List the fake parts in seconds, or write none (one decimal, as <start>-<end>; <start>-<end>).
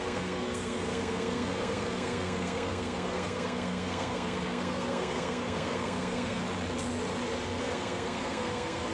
0.0-6.4; 7.6-8.9